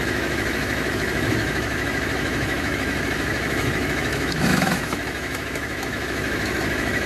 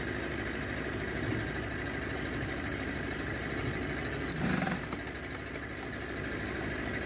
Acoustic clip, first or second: second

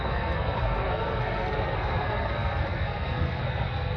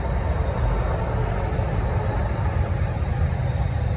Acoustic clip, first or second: second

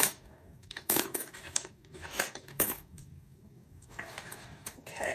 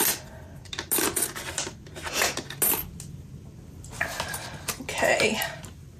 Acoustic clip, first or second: second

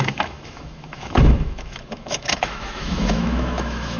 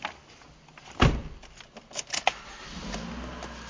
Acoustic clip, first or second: second